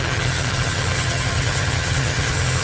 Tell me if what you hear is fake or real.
fake